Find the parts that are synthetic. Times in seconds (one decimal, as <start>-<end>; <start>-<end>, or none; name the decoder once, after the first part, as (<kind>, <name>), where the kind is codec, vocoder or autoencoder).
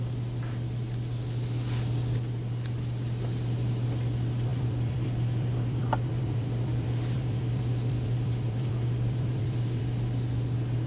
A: 4.5-9.8 (vocoder, BigVGAN v2)